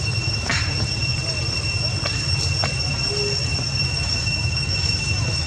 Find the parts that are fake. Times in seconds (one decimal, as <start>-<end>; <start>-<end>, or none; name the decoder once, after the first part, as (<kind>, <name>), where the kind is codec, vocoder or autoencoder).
0.0-0.5 (autoencoder, DAC-VAE); 3.8-5.5